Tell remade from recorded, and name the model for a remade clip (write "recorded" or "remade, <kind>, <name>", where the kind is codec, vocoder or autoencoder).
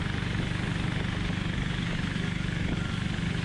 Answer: recorded